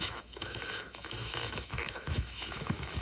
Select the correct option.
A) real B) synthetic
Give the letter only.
B